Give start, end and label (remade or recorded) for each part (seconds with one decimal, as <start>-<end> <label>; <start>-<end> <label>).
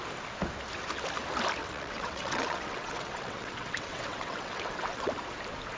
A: 0.0-1.6 recorded; 1.6-5.1 remade; 5.1-5.8 recorded